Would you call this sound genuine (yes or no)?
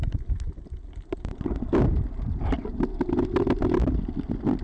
yes